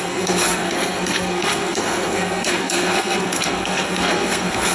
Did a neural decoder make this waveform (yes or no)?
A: yes